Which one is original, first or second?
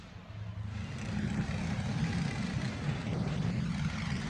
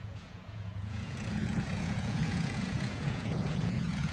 first